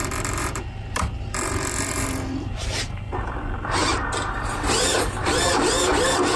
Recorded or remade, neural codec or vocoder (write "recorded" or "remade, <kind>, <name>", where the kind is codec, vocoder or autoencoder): remade, vocoder, BigVGAN v2